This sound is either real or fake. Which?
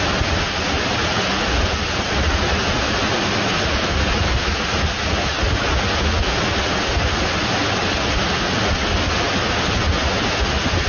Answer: real